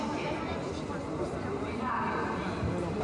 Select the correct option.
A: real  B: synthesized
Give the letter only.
A